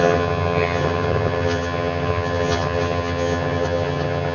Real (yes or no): no